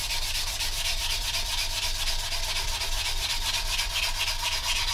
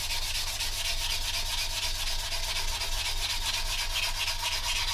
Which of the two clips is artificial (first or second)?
first